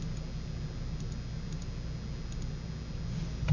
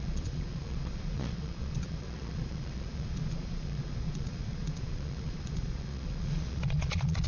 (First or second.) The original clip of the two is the first